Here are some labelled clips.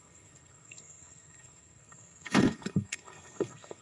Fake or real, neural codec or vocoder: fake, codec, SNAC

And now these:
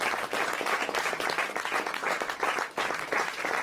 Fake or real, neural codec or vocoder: real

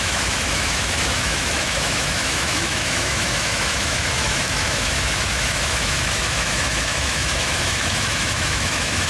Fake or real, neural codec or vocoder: fake, autoencoder, DAC-VAE